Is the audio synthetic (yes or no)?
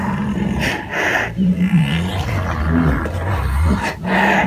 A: no